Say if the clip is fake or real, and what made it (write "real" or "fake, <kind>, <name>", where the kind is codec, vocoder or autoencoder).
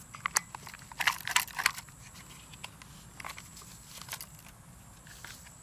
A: real